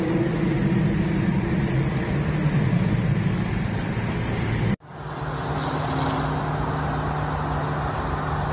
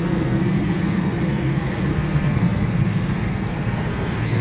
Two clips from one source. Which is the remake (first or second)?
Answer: second